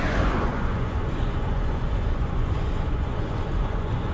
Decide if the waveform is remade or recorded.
remade